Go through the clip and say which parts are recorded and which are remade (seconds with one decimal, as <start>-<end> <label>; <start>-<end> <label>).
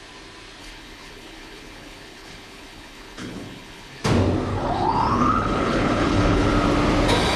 0.0-0.6 recorded; 0.6-4.0 remade; 4.0-4.5 recorded; 4.5-6.5 remade; 6.5-7.4 recorded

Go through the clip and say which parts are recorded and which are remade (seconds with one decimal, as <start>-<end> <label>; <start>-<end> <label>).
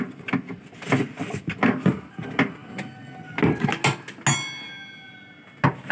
0.0-5.9 recorded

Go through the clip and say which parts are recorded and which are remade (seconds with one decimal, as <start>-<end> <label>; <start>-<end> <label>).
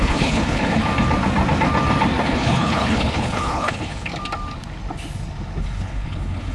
0.0-0.8 remade; 0.8-2.2 recorded; 2.2-4.1 remade; 4.1-5.6 recorded; 5.6-6.5 remade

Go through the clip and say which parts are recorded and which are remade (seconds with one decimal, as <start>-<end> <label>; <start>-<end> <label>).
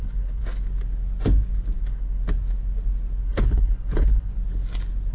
0.0-0.4 remade; 0.4-1.8 recorded; 1.8-2.2 remade; 2.2-3.2 recorded; 3.2-4.3 remade; 4.3-5.1 recorded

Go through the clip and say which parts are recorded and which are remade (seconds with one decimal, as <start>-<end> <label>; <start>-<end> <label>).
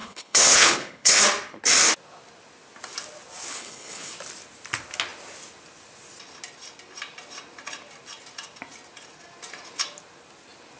0.0-1.2 remade; 1.2-3.5 recorded; 3.5-4.1 remade; 4.1-10.8 recorded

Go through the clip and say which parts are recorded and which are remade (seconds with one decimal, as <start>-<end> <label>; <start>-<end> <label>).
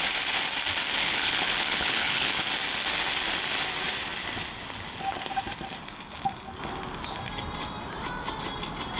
0.0-1.0 recorded; 1.0-2.3 remade; 2.3-9.0 recorded